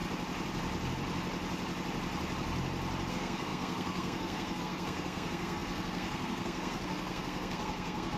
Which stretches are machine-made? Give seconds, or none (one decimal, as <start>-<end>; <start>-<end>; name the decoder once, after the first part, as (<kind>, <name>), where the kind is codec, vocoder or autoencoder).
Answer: 3.1-8.2 (codec, SNAC)